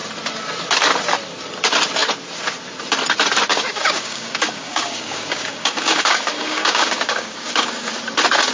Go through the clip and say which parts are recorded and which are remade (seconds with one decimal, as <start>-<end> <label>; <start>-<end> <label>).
0.0-3.5 recorded; 3.5-7.9 remade; 7.9-8.5 recorded